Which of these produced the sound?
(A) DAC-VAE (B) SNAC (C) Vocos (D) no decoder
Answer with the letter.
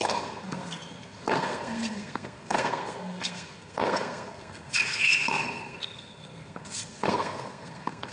B